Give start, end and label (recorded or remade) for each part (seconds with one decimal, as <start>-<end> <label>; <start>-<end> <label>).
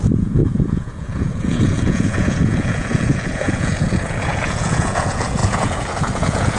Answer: 0.0-6.6 remade